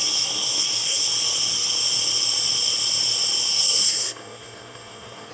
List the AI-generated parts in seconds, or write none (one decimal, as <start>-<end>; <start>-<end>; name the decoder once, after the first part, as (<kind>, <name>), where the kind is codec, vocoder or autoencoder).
0.0-1.1 (codec, SNAC); 3.5-5.3